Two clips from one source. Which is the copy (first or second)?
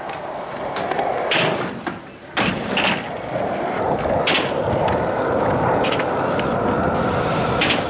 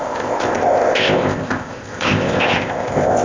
second